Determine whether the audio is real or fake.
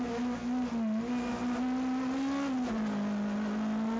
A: real